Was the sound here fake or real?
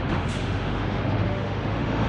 fake